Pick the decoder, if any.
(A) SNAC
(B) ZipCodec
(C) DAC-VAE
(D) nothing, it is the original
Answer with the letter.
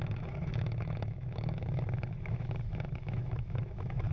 C